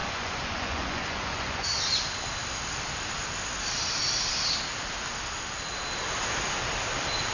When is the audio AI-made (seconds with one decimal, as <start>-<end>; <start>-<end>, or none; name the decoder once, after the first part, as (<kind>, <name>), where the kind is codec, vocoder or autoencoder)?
0.0-1.8 (vocoder, Vocos)